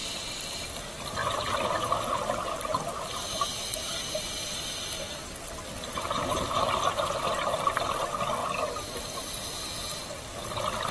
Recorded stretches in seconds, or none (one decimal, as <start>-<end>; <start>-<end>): 0.0-1.2; 1.7-10.9